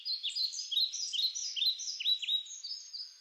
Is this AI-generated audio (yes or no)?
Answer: no